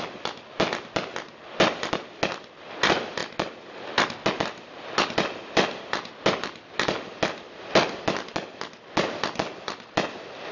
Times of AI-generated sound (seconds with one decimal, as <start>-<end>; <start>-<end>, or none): none